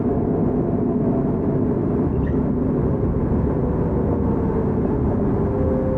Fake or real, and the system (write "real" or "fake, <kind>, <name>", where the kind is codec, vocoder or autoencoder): real